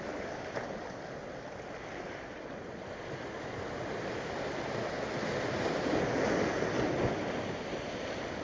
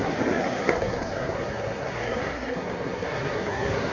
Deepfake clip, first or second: second